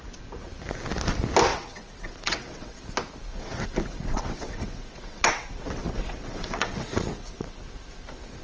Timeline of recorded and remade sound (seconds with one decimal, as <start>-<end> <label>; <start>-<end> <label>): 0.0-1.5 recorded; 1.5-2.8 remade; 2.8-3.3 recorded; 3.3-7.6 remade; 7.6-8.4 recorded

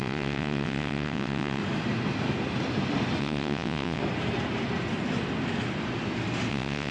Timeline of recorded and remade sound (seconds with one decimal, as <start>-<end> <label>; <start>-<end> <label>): 0.0-1.6 remade; 1.6-3.2 recorded; 3.2-4.0 remade; 4.0-6.5 recorded; 6.5-6.9 remade

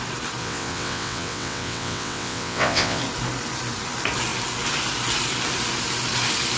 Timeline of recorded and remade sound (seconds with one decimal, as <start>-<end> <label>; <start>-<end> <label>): 0.0-0.4 recorded; 0.4-3.0 remade; 3.0-6.6 recorded

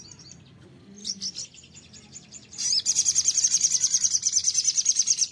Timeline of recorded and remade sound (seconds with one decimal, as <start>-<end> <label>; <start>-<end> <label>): 0.0-5.3 recorded